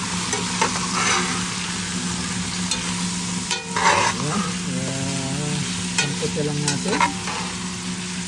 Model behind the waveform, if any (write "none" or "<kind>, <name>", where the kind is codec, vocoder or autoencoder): none